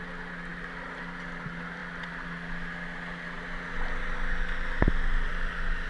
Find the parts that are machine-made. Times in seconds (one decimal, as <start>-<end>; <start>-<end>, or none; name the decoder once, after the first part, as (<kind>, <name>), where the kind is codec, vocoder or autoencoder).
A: none